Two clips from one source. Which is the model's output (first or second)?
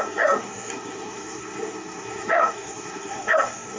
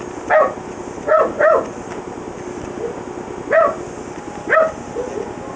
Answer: first